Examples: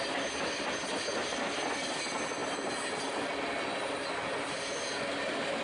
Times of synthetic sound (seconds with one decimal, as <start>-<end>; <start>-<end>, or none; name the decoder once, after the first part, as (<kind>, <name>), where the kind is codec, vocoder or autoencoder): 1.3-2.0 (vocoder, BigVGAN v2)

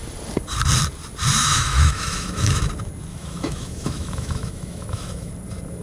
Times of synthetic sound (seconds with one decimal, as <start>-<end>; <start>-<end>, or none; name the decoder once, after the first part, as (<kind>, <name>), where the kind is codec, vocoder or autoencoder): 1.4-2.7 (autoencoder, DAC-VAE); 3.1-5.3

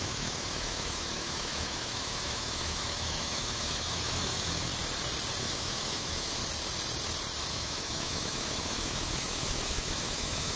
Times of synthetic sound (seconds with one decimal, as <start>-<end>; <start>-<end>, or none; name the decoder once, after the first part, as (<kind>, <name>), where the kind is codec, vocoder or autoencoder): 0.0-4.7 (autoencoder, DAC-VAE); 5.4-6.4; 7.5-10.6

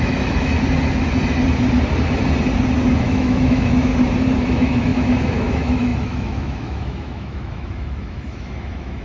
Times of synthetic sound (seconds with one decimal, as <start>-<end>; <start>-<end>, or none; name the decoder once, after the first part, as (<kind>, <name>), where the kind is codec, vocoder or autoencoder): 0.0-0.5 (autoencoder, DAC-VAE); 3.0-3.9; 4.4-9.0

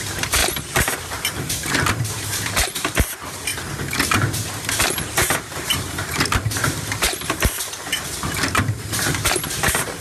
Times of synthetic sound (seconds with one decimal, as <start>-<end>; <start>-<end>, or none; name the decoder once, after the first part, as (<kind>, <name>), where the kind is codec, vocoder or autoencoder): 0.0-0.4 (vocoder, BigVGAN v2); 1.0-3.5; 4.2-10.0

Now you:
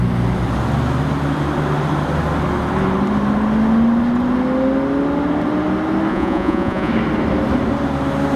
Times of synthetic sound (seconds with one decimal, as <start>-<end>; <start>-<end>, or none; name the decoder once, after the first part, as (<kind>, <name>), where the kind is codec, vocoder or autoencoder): 6.1-6.9 (vocoder, Vocos)